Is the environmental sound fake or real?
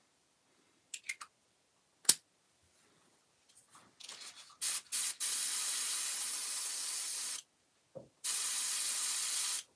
real